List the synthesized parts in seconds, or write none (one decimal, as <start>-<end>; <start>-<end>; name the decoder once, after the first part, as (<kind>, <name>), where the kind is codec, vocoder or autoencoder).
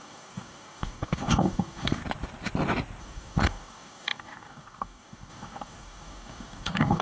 0.0-2.0 (codec, DAC); 3.0-7.0